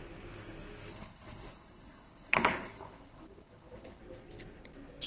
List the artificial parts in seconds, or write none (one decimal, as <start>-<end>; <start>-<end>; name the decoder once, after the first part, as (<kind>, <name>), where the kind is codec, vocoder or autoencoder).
0.9-4.0 (codec, HILCodec)